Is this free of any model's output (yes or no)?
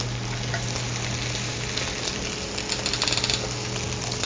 yes